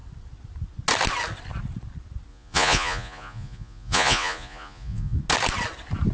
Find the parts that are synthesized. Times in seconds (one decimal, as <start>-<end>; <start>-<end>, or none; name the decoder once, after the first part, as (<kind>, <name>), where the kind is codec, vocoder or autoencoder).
2.3-5.2 (vocoder, Vocos)